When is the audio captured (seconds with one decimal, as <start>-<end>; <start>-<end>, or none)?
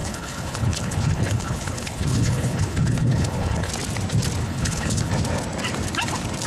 3.7-4.4; 5.1-6.5